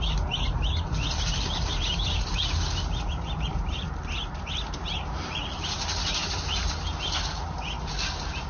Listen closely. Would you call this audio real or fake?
fake